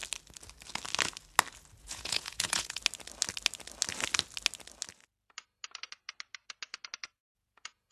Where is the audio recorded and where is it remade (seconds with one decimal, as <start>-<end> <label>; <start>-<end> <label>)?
0.0-1.8 recorded; 1.8-2.8 remade; 2.8-7.2 recorded; 7.2-7.9 remade